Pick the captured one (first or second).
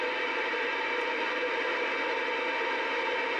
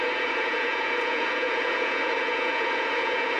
first